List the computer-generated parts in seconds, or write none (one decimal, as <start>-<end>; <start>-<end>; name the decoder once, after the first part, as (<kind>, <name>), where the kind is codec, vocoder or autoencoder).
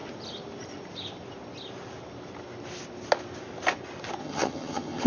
4.2-5.1 (vocoder, HiFi-GAN)